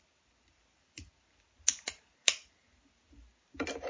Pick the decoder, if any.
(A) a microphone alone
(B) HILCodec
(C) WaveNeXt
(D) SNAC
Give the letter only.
A